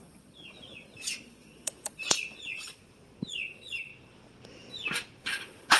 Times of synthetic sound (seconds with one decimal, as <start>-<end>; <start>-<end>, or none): 0.0-2.8; 3.3-3.9; 5.3-5.8